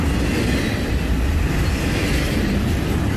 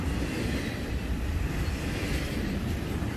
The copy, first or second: second